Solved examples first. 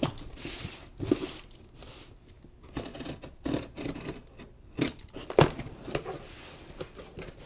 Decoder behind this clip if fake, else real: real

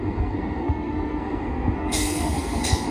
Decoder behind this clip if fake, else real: fake, codec, SNAC